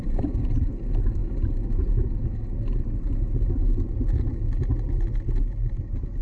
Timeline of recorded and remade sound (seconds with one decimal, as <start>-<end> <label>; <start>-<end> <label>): 0.0-6.2 recorded